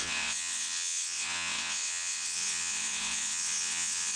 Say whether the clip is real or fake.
fake